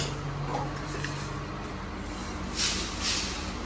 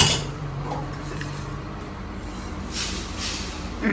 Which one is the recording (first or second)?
first